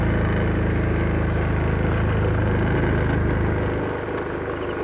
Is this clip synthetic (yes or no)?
no